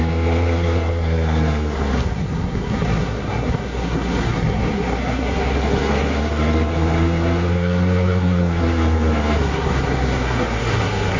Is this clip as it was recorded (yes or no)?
no